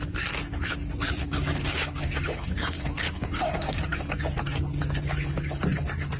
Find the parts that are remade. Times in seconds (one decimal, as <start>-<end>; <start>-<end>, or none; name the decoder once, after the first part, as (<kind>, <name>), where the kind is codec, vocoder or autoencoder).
1.2-4.0 (codec, DAC)